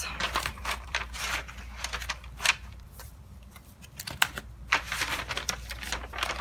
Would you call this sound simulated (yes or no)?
yes